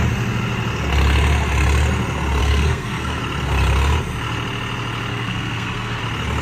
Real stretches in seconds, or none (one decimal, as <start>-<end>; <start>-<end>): 0.0-2.4; 3.2-5.1; 6.0-6.4